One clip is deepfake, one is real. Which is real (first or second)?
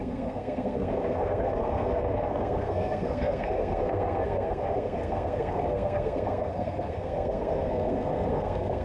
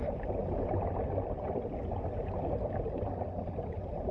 second